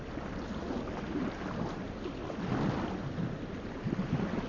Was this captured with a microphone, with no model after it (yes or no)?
yes